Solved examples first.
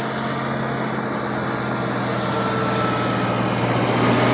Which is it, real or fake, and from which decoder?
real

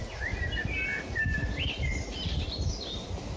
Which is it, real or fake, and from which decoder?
real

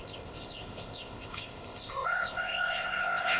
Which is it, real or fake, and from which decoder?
fake, codec, ZipCodec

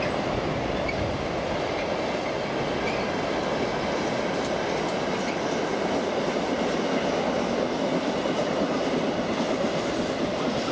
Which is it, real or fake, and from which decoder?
real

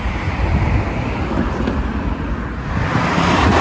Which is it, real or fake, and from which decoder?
real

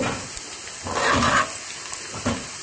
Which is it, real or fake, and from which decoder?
real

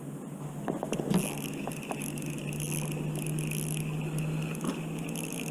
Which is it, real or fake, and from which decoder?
real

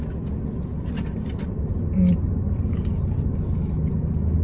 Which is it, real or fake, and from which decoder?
real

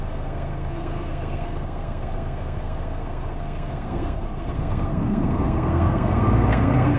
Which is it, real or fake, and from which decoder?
fake, codec, SNAC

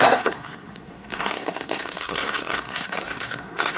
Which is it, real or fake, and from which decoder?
fake, codec, SNAC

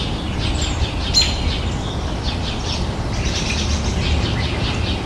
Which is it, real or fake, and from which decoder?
real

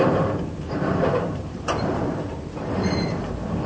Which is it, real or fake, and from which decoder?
fake, vocoder, BigVGAN v2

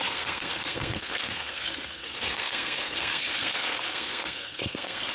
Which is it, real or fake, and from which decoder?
fake, codec, SNAC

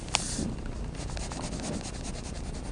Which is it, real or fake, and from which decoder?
real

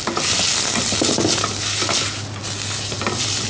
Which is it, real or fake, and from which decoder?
real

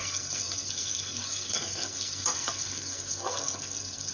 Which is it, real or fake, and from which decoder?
fake, codec, SNAC